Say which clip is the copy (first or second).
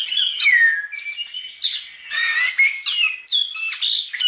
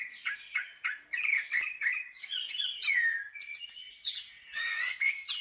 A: second